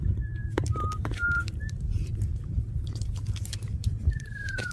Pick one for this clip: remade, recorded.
remade